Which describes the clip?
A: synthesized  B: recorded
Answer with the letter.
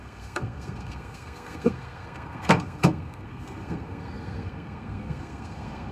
A